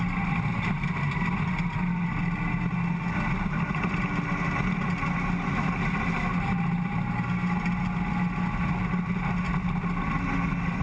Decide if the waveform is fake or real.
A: real